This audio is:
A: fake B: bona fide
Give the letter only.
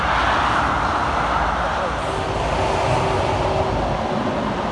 B